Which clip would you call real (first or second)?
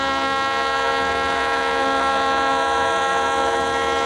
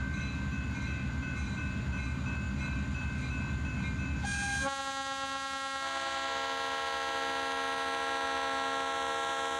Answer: second